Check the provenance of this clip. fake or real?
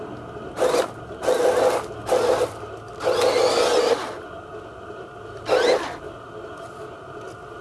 real